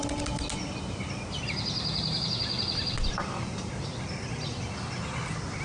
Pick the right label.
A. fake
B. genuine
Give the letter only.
B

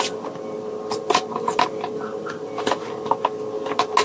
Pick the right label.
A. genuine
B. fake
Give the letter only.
A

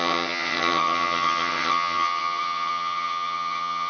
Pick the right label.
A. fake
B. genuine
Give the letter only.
A